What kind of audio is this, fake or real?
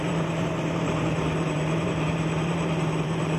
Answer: fake